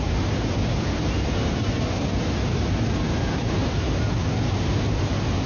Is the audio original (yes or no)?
yes